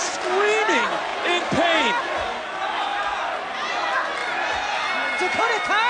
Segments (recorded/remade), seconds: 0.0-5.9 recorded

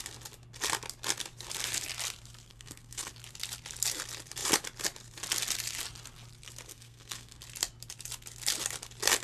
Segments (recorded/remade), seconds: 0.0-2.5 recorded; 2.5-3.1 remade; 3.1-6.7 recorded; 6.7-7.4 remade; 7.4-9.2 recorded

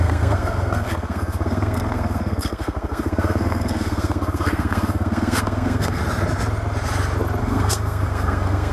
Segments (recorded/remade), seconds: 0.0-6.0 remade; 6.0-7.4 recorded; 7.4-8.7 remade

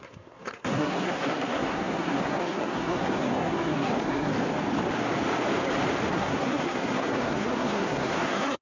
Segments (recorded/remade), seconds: 0.0-4.3 remade; 4.3-6.1 recorded; 6.1-8.6 remade

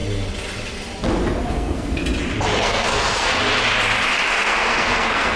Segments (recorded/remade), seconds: 0.0-1.5 recorded; 1.5-2.0 remade; 2.0-2.6 recorded; 2.6-3.4 remade; 3.4-4.3 recorded; 4.3-5.4 remade

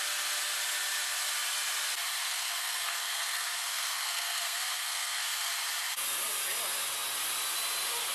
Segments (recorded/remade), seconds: 0.0-2.2 recorded; 2.2-5.5 remade; 5.5-8.1 recorded

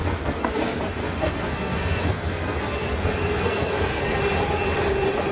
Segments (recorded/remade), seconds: 0.0-0.5 remade; 0.5-1.0 recorded; 1.0-4.2 remade; 4.2-5.3 recorded